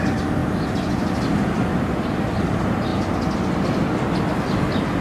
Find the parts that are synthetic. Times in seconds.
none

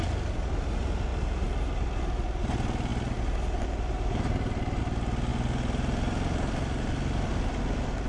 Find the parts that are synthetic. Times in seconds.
none

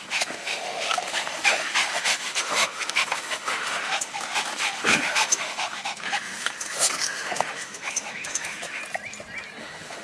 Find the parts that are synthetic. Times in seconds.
0.0-8.8 (autoencoder, DAC-VAE); 9.6-10.0

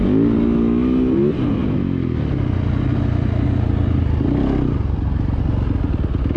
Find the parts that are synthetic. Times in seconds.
none

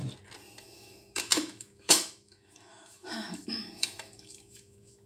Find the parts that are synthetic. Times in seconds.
0.6-5.1 (autoencoder, DAC-VAE)

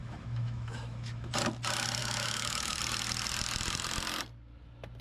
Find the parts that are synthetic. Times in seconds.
0.0-1.3 (autoencoder, DAC-VAE); 2.0-2.8

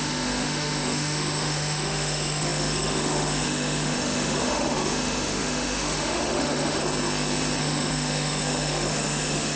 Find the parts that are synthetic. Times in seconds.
0.0-6.8 (autoencoder, DAC-VAE); 7.6-9.6

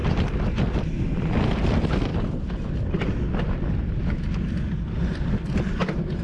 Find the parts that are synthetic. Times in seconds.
none